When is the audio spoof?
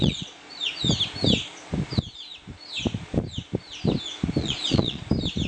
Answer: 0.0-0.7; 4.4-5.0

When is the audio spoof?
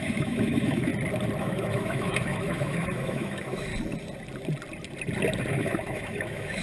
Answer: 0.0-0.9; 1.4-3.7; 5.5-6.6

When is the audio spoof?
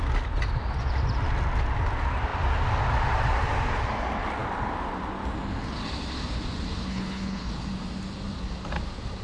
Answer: 6.9-7.5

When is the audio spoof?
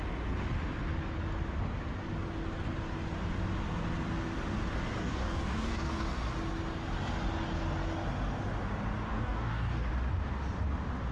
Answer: 5.0-5.9; 9.1-9.9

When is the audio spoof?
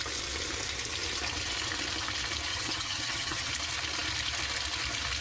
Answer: 2.5-3.5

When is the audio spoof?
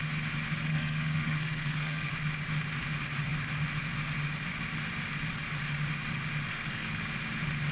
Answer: 0.7-2.1; 6.5-7.0